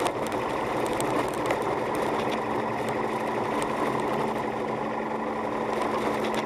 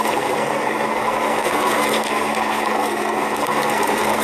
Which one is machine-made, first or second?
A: second